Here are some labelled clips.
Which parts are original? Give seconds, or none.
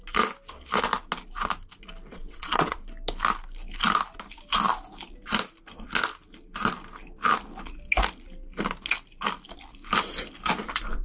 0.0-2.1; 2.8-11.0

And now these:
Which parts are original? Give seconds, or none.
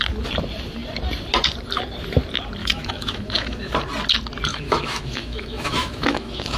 0.0-2.6; 3.7-4.5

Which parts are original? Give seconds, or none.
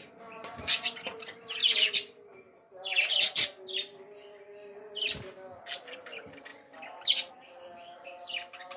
0.0-8.8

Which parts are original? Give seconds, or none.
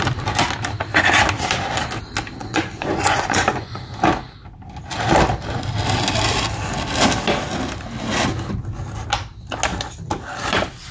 0.0-2.4; 3.8-10.9